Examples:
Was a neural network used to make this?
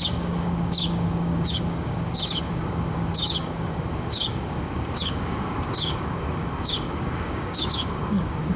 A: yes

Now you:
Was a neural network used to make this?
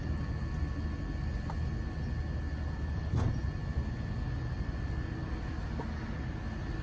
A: no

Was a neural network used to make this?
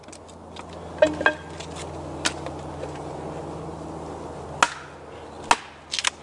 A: no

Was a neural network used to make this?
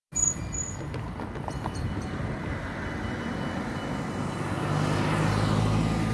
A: no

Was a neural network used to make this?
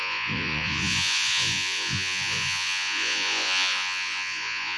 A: yes